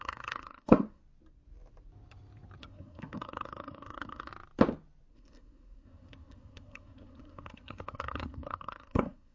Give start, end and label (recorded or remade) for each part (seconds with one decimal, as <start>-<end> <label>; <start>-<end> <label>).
0.0-1.0 remade; 1.0-2.6 recorded; 2.6-4.3 remade; 4.3-5.1 recorded; 5.1-9.3 remade